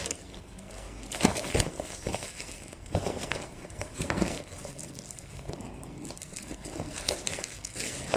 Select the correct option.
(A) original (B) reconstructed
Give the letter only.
B